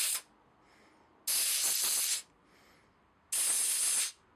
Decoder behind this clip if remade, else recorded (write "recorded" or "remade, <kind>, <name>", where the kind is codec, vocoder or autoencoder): recorded